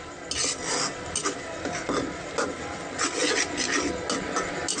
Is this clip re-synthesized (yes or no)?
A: no